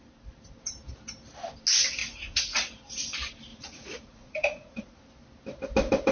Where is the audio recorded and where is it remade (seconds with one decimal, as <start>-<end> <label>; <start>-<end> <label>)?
0.0-2.0 recorded; 2.0-2.7 remade; 2.7-3.5 recorded; 3.5-5.0 remade; 5.0-6.1 recorded